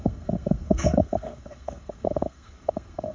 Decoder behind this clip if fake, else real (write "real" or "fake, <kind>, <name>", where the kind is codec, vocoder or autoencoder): fake, codec, SNAC